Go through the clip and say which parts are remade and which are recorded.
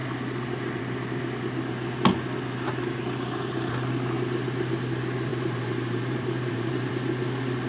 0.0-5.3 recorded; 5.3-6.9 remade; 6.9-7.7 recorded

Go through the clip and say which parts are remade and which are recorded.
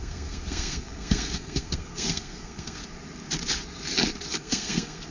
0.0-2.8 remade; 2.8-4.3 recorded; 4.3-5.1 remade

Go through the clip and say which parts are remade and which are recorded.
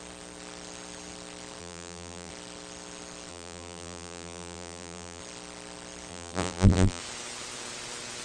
0.0-1.6 recorded; 1.6-2.3 remade; 2.3-3.3 recorded; 3.3-5.2 remade; 5.2-6.1 recorded; 6.1-7.0 remade; 7.0-8.2 recorded